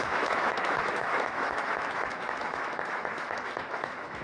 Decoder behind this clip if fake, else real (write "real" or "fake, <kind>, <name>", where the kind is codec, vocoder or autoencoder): fake, autoencoder, DAC-VAE